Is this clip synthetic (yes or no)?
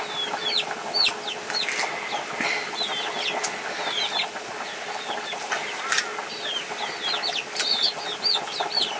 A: no